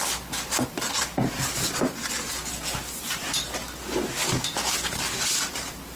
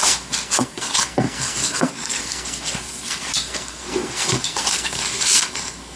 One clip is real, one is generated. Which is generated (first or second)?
second